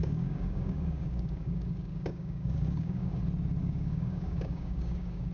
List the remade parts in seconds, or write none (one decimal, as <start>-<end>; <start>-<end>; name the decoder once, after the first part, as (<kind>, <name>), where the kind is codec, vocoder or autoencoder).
0.0-3.2 (codec, DAC); 3.6-5.3